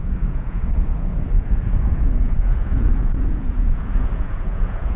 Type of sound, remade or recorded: remade